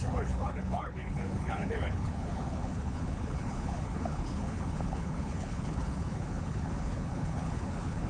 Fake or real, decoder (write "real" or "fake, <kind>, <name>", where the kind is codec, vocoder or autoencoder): fake, codec, HILCodec